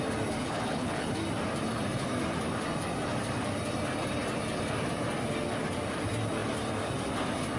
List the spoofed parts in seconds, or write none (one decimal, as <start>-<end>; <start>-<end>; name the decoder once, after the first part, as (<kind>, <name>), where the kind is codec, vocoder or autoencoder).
0.4-1.1 (codec, HILCodec)